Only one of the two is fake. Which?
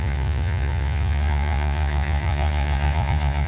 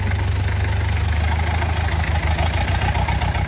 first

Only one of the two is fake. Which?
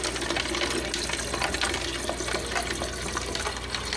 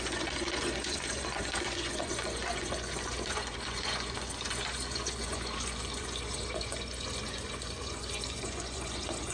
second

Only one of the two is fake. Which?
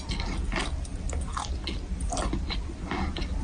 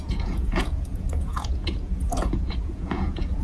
second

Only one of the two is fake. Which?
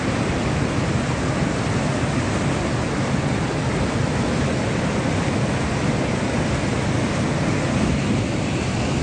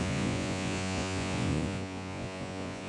second